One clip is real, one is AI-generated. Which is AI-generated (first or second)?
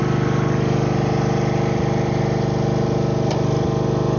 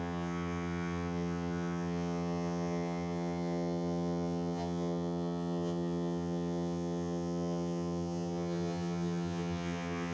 second